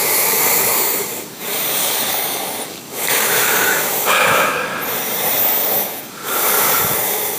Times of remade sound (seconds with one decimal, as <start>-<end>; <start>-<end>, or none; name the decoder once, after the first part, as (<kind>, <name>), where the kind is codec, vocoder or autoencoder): 0.0-4.7 (codec, DAC); 5.4-7.4